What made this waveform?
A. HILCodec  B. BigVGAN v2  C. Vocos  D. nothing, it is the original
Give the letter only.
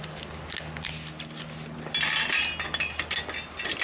D